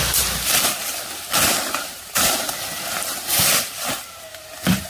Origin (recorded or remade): remade